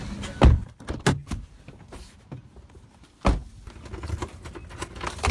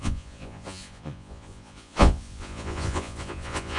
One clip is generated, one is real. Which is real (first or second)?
first